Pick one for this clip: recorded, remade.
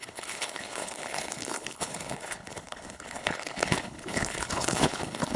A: remade